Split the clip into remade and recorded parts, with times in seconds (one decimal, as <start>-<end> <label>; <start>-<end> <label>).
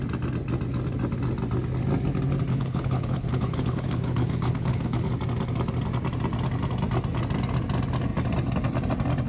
0.0-2.5 recorded; 2.5-5.1 remade; 5.1-9.3 recorded